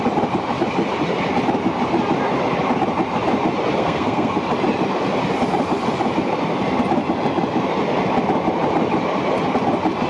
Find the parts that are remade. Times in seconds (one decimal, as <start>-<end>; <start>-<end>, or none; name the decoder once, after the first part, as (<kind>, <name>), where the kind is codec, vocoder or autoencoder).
3.8-4.4 (codec, SNAC)